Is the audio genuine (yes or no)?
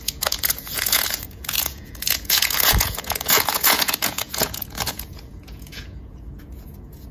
no